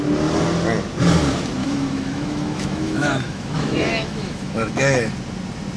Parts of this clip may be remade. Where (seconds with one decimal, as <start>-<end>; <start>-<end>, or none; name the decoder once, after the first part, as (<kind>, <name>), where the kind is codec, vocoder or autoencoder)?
1.6-5.1 (autoencoder, DAC-VAE)